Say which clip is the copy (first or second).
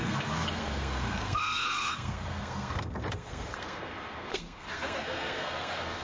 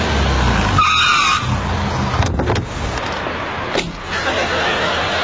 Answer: first